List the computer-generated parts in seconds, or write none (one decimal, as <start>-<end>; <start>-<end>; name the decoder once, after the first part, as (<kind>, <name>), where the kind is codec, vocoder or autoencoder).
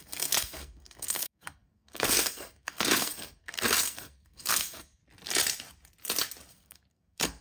0.0-5.0 (codec, SNAC); 6.5-7.4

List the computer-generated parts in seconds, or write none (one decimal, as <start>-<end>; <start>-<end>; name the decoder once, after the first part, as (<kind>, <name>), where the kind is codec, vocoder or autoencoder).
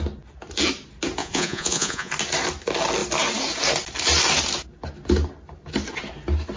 1.2-2.1 (vocoder, Vocos)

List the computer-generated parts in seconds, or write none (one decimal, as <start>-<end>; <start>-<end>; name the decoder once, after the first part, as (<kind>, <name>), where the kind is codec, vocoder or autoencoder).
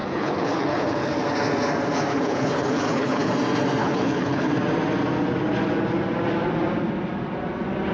0.0-1.1 (codec, HILCodec); 2.1-3.3; 3.8-4.5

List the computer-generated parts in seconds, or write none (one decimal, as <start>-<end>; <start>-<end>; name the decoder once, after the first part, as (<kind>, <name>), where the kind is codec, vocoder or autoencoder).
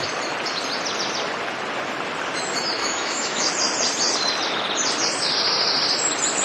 2.8-3.5 (autoencoder, DAC-VAE)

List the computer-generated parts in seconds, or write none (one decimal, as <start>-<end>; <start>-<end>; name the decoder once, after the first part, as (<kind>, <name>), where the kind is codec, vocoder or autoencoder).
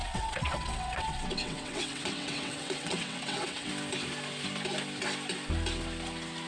0.0-3.7 (vocoder, WaveNeXt)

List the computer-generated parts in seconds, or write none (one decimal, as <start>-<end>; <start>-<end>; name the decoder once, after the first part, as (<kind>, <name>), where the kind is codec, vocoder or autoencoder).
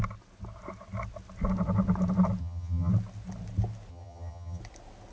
2.4-2.9 (vocoder, HiFi-GAN); 3.9-4.6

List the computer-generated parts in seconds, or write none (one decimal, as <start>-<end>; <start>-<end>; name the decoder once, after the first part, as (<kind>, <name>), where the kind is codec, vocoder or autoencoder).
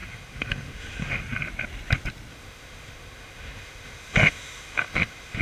0.0-1.2 (autoencoder, DAC-VAE); 2.3-5.4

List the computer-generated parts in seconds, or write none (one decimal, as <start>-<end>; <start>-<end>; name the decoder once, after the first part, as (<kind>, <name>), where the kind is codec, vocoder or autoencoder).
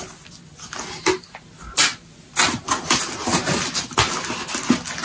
none